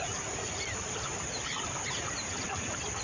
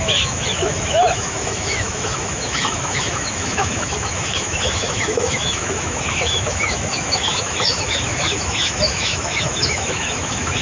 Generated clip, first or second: second